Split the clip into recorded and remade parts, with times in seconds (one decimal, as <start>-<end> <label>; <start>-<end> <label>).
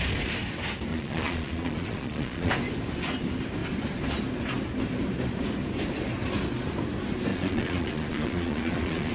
0.0-0.9 recorded; 0.9-2.5 remade; 2.5-7.3 recorded; 7.3-9.1 remade